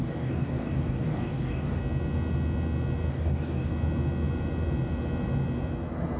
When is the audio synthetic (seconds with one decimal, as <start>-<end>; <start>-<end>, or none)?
0.0-1.8; 3.1-3.7